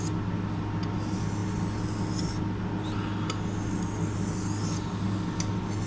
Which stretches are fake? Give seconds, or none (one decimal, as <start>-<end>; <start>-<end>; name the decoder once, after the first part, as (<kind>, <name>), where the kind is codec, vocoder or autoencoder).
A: none